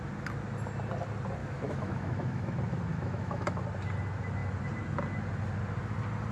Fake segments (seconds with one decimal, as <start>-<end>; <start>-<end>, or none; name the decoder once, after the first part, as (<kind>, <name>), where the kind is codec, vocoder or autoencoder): 1.4-2.5 (autoencoder, DAC-VAE); 2.9-3.6